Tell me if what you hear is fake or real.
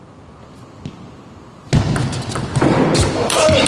real